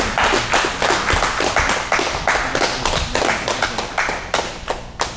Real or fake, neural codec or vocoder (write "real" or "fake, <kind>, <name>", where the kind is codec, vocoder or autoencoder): real